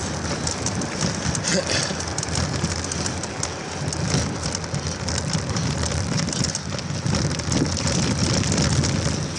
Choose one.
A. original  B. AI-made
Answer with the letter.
A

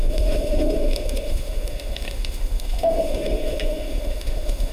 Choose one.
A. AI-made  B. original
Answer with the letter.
A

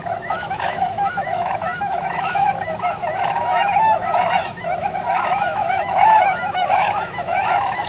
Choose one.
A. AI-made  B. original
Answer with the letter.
A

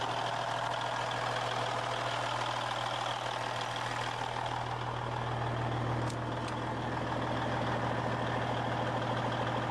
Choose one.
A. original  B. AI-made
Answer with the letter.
A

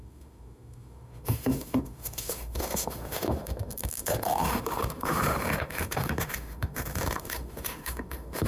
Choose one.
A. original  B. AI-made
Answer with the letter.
B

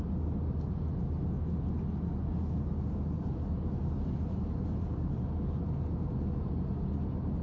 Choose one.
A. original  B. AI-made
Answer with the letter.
A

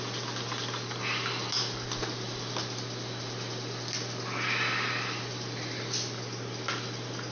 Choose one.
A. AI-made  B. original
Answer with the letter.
B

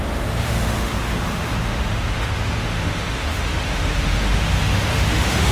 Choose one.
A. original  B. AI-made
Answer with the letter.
B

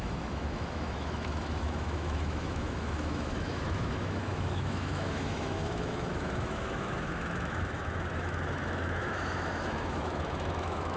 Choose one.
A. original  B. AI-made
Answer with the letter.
B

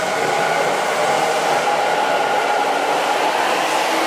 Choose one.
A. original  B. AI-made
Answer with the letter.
A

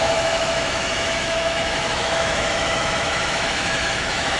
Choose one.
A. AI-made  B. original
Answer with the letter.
A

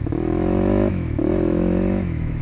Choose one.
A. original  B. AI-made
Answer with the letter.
B